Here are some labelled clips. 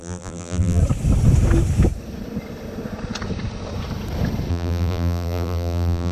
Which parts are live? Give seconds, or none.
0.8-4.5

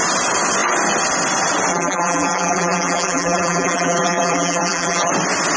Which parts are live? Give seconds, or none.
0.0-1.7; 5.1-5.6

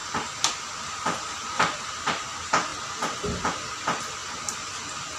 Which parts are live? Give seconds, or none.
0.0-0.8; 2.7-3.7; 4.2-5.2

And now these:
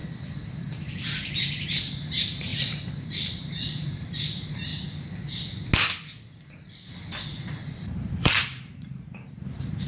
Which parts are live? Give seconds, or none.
0.0-0.5; 4.7-7.7